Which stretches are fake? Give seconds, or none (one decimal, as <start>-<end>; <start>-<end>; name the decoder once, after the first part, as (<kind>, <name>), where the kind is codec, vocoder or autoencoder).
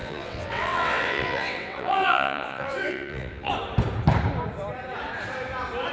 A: 0.0-3.5 (vocoder, WaveNeXt)